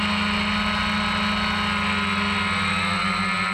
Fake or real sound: real